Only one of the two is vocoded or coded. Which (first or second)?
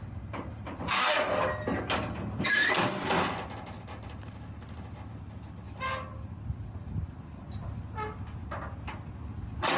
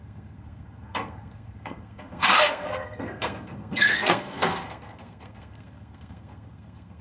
second